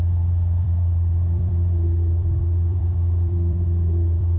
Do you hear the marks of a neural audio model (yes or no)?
yes